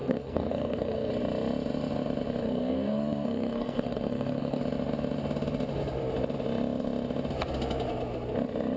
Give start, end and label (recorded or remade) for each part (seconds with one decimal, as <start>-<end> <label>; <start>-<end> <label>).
0.0-1.1 remade; 1.1-2.4 recorded; 2.4-4.6 remade; 4.6-8.8 recorded